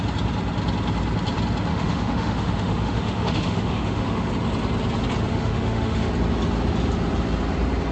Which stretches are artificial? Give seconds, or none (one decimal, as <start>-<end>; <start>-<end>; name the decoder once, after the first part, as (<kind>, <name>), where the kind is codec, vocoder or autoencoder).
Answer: 1.7-4.3 (autoencoder, DAC-VAE); 5.3-6.1